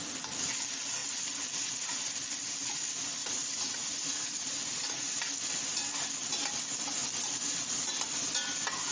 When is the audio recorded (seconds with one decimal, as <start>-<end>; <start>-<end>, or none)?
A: 0.0-3.2; 5.1-8.9